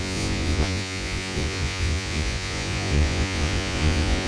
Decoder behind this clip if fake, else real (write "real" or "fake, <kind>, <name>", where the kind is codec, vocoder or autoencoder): fake, vocoder, Vocos